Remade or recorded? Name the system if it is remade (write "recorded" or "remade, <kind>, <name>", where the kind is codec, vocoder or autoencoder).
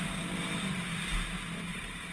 recorded